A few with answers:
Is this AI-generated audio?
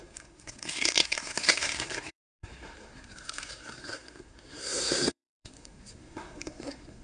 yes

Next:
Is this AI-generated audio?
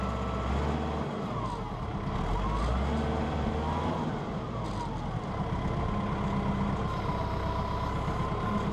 no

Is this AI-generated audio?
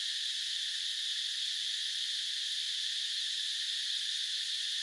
no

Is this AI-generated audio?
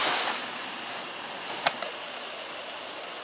no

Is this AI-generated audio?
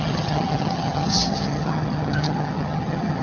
yes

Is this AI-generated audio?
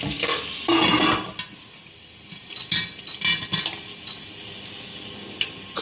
no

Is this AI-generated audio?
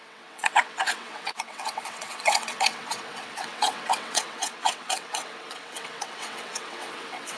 yes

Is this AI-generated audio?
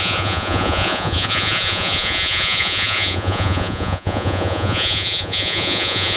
yes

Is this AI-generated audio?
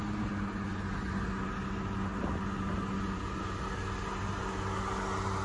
no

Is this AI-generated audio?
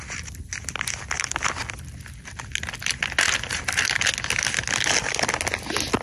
no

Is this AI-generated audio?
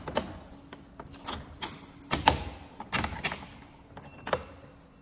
no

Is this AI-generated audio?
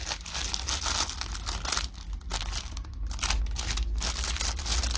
no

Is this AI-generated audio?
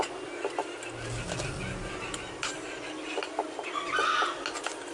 no